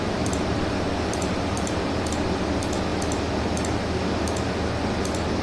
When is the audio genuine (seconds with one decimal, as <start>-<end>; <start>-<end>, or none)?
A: 2.0-5.4